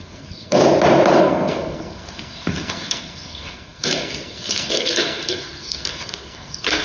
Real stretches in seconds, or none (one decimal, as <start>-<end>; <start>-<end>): 0.6-1.2